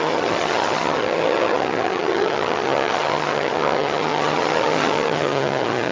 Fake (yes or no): yes